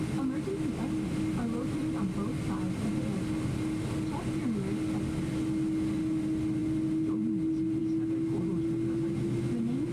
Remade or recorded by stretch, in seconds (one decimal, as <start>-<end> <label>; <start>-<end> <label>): 0.0-9.9 recorded

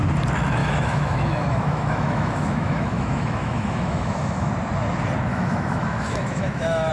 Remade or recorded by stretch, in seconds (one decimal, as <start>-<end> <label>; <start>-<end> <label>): 0.0-0.6 recorded; 0.6-4.5 remade; 4.5-5.3 recorded; 5.3-6.9 remade

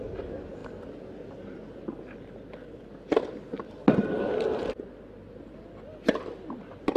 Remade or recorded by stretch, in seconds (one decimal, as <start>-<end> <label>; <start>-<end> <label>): 0.0-7.0 recorded

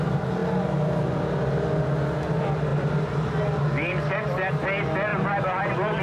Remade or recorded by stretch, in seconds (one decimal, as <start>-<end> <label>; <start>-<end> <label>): 0.0-6.0 recorded

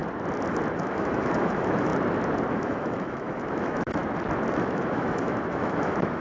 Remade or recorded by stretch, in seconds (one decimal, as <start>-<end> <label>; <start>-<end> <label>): 0.0-0.8 recorded; 0.8-1.9 remade; 1.9-2.5 recorded; 2.5-4.0 remade; 4.0-4.5 recorded; 4.5-6.2 remade

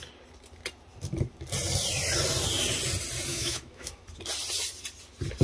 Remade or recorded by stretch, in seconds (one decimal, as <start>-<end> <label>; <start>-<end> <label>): 0.0-3.3 recorded; 3.3-3.9 remade; 3.9-5.4 recorded